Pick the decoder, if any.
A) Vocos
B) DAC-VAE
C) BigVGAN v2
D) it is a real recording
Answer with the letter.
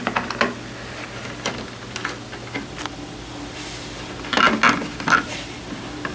D